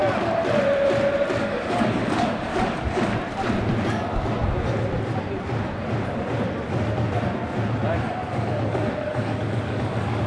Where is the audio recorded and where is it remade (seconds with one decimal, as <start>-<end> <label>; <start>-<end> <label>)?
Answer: 0.0-1.4 recorded; 1.4-3.1 remade; 3.1-8.0 recorded; 8.0-10.3 remade